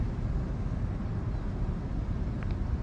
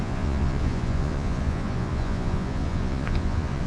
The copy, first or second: second